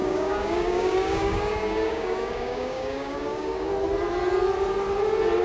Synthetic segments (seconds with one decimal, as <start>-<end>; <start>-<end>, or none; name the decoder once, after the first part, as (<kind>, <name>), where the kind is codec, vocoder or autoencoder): 0.0-3.7 (codec, DAC)